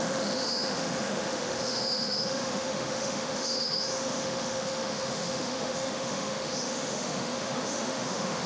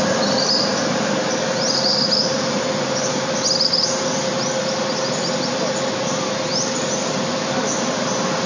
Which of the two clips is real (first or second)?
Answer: second